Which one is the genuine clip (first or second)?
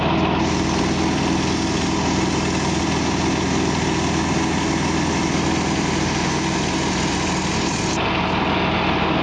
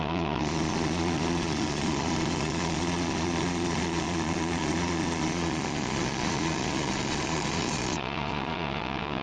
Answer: first